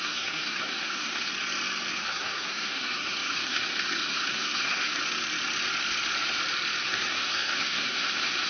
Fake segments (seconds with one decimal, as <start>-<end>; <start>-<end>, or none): 0.0-1.3; 1.9-5.0; 6.8-8.5